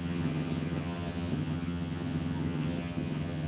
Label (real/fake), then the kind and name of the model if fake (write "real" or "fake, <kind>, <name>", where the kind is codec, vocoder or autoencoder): fake, vocoder, HiFi-GAN